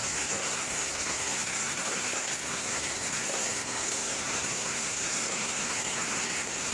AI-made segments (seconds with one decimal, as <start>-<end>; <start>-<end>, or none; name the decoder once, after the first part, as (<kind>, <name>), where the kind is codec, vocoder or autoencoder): 0.0-6.7 (codec, SNAC)